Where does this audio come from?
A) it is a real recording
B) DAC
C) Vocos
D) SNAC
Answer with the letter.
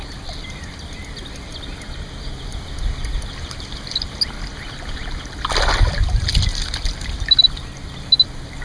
A